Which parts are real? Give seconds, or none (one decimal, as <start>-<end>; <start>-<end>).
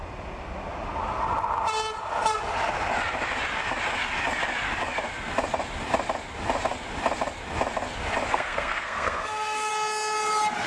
0.0-8.3; 9.7-10.7